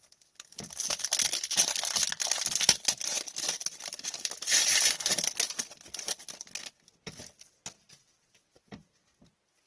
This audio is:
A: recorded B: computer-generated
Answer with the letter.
A